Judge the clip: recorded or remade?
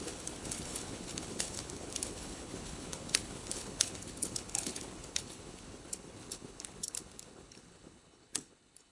remade